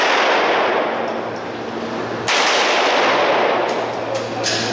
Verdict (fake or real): real